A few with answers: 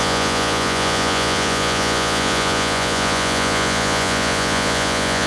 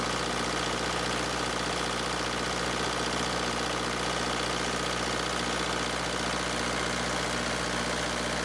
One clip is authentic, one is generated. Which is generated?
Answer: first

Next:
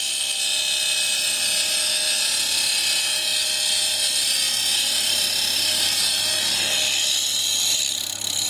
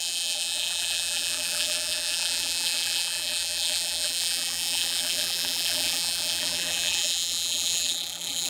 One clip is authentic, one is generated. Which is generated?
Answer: second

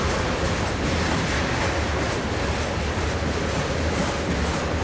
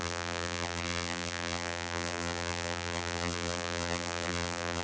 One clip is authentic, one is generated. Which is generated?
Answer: second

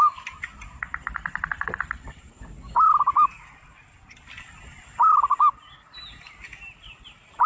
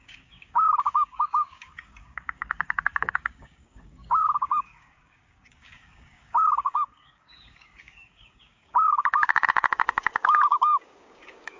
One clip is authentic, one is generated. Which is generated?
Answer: second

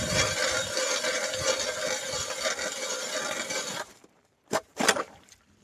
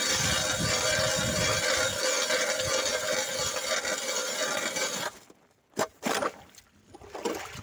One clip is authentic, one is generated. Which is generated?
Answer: first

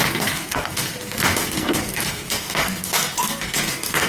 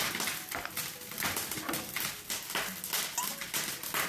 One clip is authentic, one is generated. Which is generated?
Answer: first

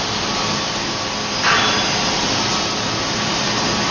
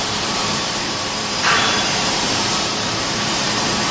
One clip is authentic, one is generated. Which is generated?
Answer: second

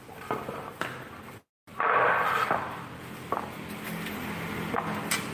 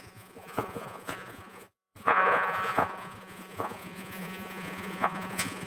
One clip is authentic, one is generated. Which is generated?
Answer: second